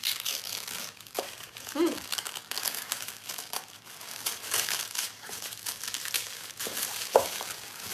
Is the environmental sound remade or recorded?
remade